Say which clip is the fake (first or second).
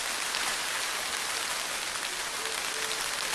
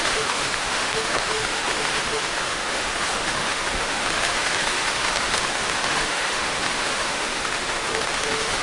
second